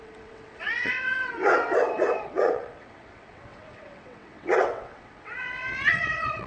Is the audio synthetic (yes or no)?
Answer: yes